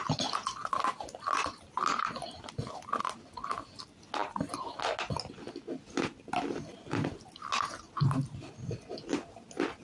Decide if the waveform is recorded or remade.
recorded